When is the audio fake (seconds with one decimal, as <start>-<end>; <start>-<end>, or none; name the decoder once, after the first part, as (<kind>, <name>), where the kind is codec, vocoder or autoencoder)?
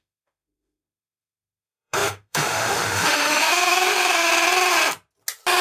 0.0-4.3 (autoencoder, DAC-VAE)